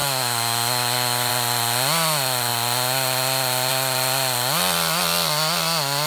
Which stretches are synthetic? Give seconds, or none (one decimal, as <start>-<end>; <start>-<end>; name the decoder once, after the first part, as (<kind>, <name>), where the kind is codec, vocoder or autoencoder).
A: 0.0-1.3 (autoencoder, DAC-VAE)